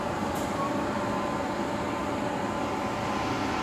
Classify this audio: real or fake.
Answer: real